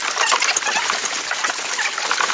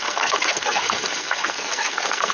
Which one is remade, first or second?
second